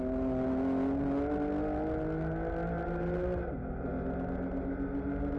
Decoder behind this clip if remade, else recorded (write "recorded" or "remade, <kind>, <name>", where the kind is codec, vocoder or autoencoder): recorded